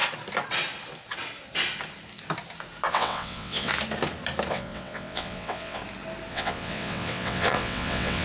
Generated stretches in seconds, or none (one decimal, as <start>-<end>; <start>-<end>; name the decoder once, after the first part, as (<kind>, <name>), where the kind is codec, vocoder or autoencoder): 2.9-3.7 (vocoder, WaveNeXt); 4.5-5.8; 6.3-8.2